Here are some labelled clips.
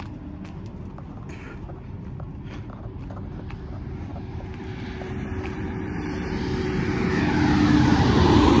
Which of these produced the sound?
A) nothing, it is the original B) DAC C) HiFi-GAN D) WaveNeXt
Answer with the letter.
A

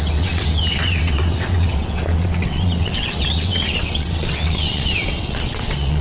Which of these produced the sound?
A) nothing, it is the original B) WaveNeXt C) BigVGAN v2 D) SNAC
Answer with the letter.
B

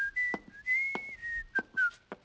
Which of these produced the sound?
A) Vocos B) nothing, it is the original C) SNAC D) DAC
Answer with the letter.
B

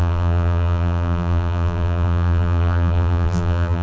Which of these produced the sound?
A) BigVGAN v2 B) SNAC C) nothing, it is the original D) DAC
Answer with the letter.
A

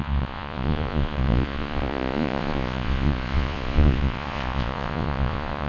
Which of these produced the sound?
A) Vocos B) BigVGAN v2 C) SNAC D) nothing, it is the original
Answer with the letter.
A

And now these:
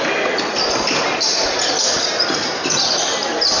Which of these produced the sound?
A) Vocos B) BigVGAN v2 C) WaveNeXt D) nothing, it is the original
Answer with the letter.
D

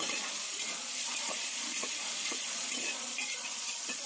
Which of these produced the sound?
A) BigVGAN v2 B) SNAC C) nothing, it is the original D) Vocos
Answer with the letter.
D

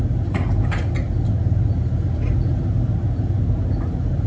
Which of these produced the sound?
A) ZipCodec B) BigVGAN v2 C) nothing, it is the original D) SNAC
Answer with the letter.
C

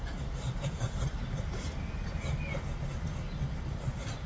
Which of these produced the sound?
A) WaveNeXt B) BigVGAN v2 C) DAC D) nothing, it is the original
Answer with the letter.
D